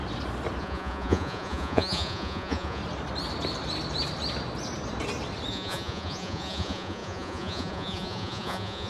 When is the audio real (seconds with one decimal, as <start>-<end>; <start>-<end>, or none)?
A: 0.0-0.6; 2.8-5.5